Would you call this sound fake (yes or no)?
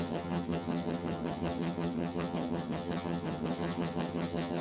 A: yes